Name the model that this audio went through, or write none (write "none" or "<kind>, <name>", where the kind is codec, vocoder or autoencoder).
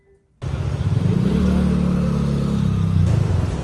none